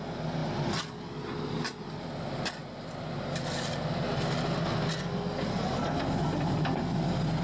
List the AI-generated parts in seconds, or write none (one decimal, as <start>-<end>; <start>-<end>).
none